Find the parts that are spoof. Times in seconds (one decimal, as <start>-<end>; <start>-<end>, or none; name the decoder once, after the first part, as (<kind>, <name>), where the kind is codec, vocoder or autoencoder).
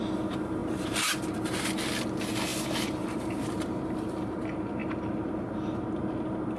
2.5-4.3 (vocoder, BigVGAN v2); 4.8-5.8